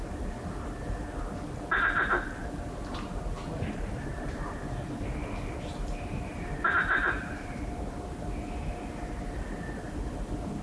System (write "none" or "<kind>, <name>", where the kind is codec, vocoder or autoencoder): none